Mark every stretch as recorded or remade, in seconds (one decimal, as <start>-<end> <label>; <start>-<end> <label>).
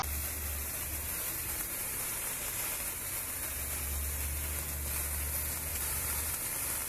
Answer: 0.0-0.6 recorded; 0.6-2.4 remade; 2.4-5.7 recorded; 5.7-6.3 remade; 6.3-6.9 recorded